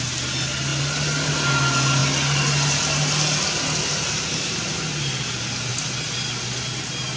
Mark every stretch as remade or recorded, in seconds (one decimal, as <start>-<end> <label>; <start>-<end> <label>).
0.0-7.2 recorded